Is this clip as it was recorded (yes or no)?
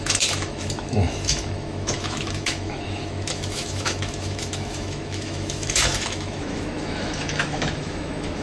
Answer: no